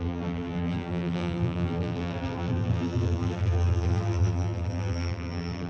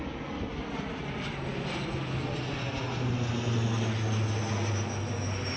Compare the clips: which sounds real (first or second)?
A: second